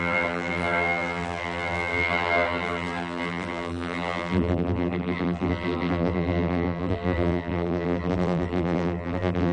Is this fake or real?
fake